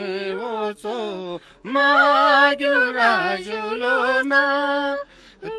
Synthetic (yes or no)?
yes